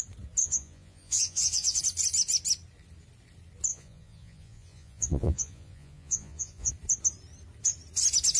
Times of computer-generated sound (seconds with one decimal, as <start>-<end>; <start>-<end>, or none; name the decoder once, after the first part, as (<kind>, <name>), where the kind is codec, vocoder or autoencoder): 0.4-1.8 (vocoder, Vocos); 3.7-6.7